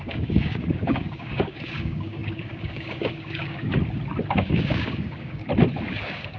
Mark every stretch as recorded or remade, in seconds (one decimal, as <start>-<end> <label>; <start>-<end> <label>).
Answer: 0.0-3.7 remade; 3.7-4.3 recorded; 4.3-5.4 remade; 5.4-5.9 recorded; 5.9-6.4 remade